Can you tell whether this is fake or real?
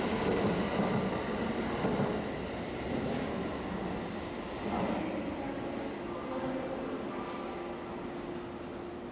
real